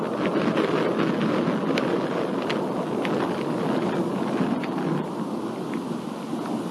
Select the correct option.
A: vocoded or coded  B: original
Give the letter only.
B